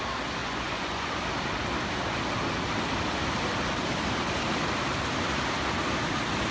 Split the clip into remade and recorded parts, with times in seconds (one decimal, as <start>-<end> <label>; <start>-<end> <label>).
0.0-0.4 recorded; 0.4-1.1 remade; 1.1-6.5 recorded

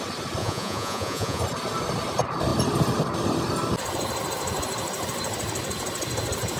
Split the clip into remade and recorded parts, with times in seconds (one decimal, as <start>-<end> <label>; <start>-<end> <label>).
0.0-0.4 recorded; 0.4-1.4 remade; 1.4-6.6 recorded

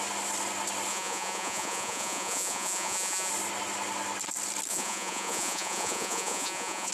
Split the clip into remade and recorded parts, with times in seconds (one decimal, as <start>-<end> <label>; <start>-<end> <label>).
0.0-0.9 recorded; 0.9-3.3 remade; 3.3-4.7 recorded; 4.7-6.9 remade

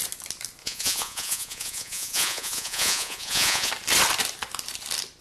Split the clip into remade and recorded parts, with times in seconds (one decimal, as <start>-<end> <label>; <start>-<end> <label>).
0.0-0.6 recorded; 0.6-3.7 remade; 3.7-5.2 recorded

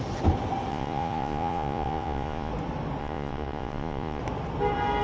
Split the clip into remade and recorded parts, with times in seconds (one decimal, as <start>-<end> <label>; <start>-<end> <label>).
0.0-0.7 recorded; 0.7-2.5 remade; 2.5-3.0 recorded; 3.0-4.2 remade; 4.2-5.0 recorded

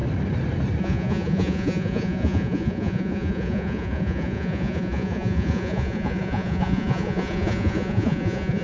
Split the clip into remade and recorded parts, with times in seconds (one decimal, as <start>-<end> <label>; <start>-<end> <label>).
0.0-0.8 recorded; 0.8-8.6 remade